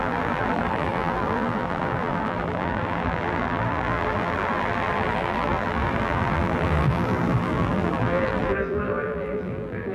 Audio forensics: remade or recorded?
remade